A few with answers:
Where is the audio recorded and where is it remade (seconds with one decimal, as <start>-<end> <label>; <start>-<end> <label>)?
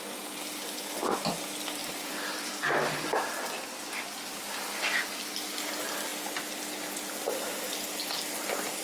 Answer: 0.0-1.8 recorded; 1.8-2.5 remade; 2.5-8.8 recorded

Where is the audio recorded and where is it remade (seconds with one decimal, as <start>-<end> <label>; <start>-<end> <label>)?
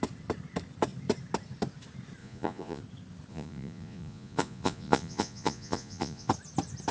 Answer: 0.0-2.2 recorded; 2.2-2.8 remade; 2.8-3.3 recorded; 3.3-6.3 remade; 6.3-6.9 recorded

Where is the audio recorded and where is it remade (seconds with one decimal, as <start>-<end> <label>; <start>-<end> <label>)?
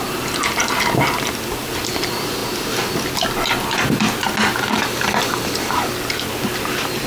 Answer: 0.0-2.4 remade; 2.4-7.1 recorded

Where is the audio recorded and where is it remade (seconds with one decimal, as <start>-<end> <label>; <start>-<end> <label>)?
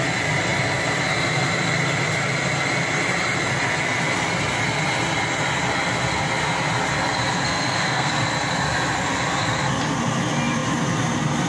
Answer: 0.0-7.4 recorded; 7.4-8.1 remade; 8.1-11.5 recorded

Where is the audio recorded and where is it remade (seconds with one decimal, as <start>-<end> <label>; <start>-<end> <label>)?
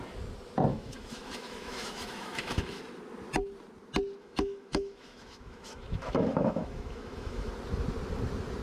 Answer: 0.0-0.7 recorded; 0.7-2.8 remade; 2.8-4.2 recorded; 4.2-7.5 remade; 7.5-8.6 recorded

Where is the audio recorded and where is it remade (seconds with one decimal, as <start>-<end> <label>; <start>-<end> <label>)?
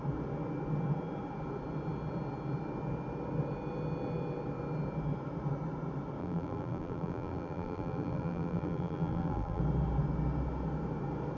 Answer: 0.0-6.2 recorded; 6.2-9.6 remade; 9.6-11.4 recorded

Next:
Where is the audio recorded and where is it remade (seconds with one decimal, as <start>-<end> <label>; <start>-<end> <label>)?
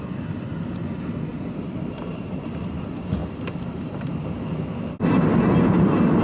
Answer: 0.0-3.2 recorded; 3.2-4.2 remade; 4.2-6.2 recorded